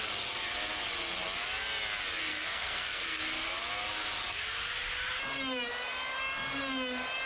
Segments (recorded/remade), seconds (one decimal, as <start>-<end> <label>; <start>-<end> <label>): 0.0-2.3 recorded; 2.3-3.2 remade; 3.2-7.3 recorded